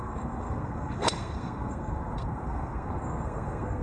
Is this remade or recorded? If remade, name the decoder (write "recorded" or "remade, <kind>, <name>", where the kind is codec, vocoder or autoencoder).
remade, codec, SNAC